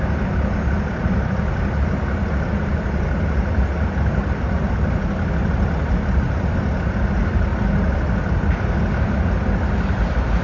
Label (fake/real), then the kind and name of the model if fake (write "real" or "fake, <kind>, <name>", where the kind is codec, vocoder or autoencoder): real